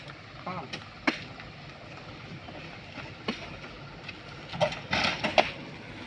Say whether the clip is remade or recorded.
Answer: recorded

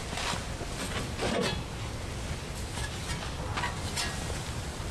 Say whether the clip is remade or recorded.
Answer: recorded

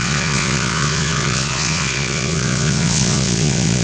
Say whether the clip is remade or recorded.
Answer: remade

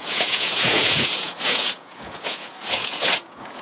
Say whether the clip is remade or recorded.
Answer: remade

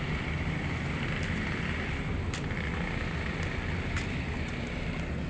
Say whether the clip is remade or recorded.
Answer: recorded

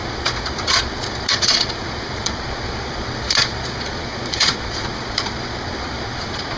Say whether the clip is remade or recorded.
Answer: remade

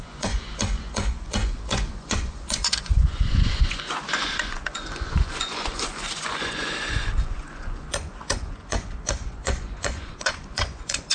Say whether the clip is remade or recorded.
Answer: remade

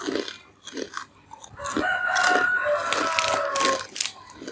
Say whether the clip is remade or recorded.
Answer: recorded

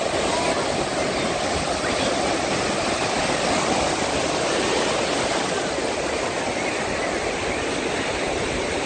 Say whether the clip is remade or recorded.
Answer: recorded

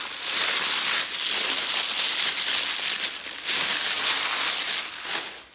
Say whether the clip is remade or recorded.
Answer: recorded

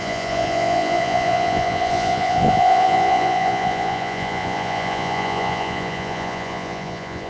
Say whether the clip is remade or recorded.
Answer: remade